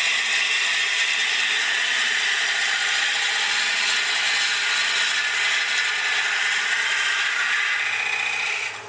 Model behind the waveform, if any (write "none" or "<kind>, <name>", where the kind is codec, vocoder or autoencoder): none